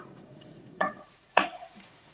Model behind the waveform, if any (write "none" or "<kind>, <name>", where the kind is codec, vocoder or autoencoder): vocoder, Vocos